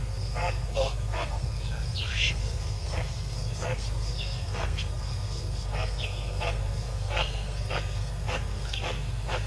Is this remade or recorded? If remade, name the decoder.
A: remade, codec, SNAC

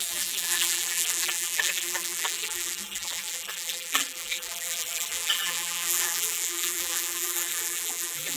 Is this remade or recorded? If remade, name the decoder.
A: remade, vocoder, BigVGAN v2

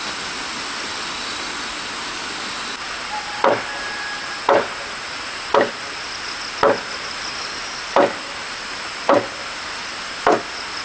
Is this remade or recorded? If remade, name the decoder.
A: recorded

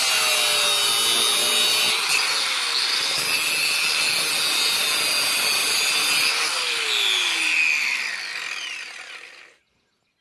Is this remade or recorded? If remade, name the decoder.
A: recorded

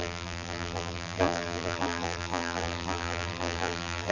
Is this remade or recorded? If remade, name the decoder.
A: remade, vocoder, BigVGAN v2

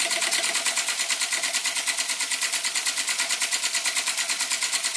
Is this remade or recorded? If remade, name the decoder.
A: recorded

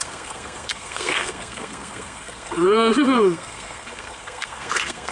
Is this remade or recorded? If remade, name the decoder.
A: remade, codec, SNAC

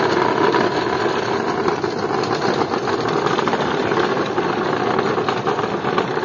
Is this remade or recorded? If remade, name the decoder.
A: recorded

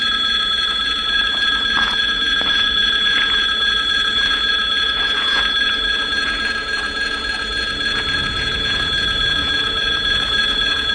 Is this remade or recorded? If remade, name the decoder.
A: remade, vocoder, Vocos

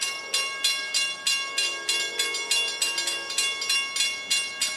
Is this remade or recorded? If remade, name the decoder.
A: recorded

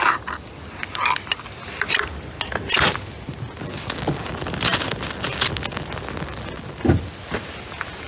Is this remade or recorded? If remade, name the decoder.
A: recorded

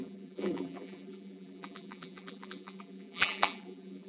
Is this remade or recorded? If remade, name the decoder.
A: remade, vocoder, BigVGAN v2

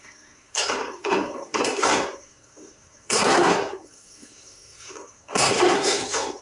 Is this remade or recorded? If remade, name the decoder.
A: remade, codec, SNAC